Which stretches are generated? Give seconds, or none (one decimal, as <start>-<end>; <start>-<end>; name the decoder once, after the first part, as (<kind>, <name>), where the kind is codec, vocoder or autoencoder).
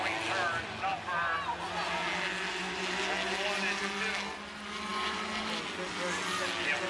none